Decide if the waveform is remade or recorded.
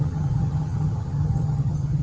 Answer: remade